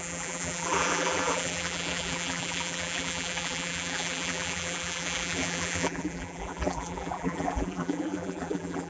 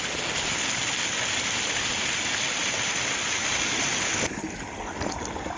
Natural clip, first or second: second